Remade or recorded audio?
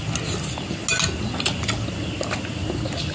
recorded